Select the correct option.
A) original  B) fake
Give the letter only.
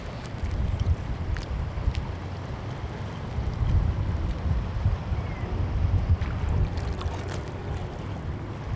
A